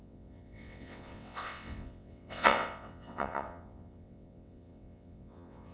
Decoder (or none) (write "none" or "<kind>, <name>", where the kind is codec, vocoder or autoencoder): vocoder, WaveNeXt